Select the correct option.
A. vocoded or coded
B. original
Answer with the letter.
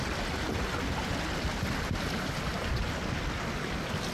B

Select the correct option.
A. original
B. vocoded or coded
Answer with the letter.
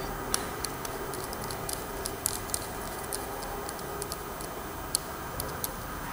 A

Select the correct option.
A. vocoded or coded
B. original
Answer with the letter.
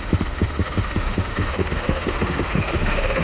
A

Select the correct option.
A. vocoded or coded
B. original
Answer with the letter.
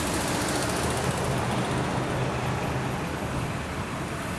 B